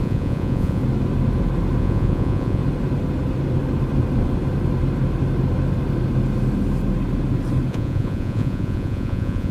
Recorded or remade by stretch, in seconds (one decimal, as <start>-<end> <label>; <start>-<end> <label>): 0.0-0.8 remade; 0.8-1.8 recorded; 1.8-2.6 remade; 2.6-7.7 recorded; 7.7-9.5 remade